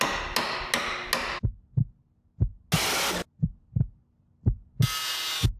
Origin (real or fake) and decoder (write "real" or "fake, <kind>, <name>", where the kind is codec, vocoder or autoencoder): real